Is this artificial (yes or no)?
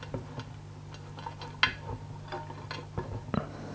no